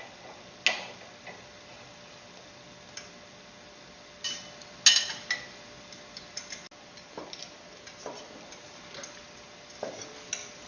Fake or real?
real